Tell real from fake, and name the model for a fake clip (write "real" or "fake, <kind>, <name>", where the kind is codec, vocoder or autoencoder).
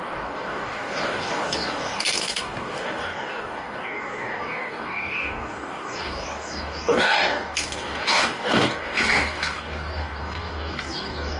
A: fake, codec, DAC